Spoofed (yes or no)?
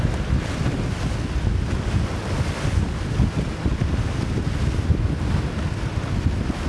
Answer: no